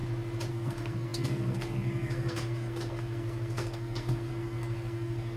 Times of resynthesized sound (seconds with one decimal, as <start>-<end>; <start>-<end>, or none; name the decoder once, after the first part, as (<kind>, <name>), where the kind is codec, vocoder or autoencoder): 0.5-5.4 (codec, SNAC)